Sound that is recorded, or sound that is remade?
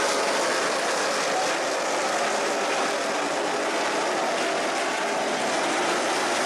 recorded